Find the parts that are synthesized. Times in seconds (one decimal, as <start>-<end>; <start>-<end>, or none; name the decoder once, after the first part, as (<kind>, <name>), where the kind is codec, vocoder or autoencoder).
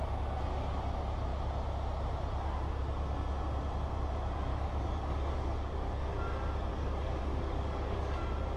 4.5-6.1 (codec, DAC); 6.7-8.2